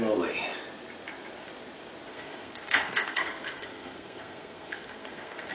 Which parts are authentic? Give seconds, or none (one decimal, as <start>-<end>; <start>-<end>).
0.0-2.1